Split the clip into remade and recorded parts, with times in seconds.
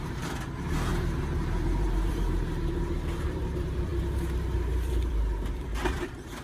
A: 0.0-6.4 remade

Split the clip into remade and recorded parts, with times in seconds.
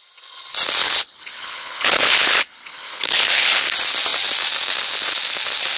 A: 0.0-0.8 recorded; 0.8-3.6 remade; 3.6-5.8 recorded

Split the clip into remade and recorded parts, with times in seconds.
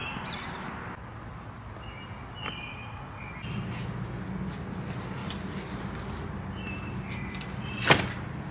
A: 0.0-2.7 recorded; 2.7-3.2 remade; 3.2-8.5 recorded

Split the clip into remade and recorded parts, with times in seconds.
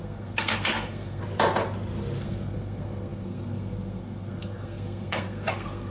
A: 0.0-1.2 remade; 1.2-2.2 recorded; 2.2-5.9 remade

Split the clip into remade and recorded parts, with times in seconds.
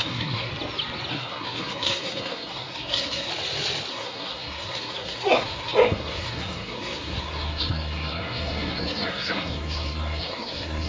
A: 0.0-0.5 remade; 0.5-1.1 recorded; 1.1-3.3 remade; 3.3-3.9 recorded; 3.9-10.9 remade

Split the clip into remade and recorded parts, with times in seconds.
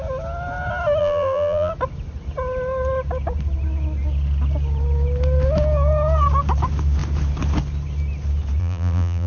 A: 0.0-1.0 recorded; 1.0-1.7 remade; 1.7-8.6 recorded; 8.6-9.3 remade